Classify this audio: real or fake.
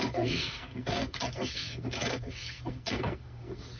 fake